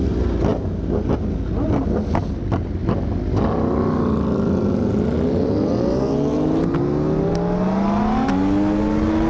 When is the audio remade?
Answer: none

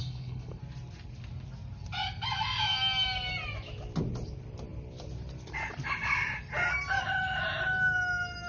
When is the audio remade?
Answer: 0.0-0.6 (codec, HILCodec)